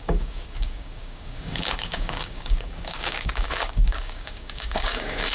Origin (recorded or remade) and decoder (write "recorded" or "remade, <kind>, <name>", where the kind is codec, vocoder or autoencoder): remade, codec, DAC